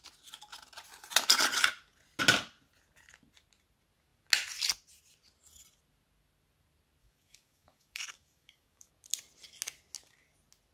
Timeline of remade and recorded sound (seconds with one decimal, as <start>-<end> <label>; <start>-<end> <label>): 0.0-7.0 recorded; 7.0-8.9 remade; 8.9-10.7 recorded